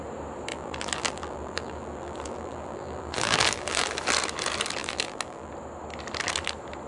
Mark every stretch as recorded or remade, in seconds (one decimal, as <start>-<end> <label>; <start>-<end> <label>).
0.0-0.5 recorded; 0.5-3.9 remade; 3.9-4.8 recorded; 4.8-5.5 remade; 5.5-6.9 recorded